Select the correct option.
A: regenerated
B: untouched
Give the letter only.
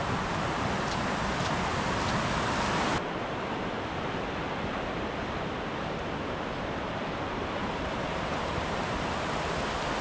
B